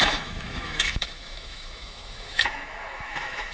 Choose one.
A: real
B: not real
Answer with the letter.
B